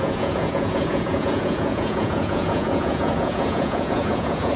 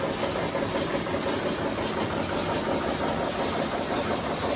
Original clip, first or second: second